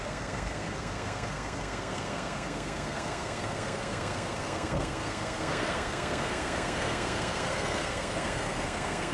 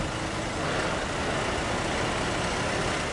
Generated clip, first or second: first